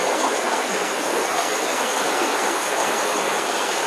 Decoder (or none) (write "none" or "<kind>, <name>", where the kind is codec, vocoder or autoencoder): codec, SNAC